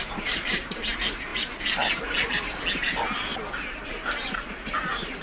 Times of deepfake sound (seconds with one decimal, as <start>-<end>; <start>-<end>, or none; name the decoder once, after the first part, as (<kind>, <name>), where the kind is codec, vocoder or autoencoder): none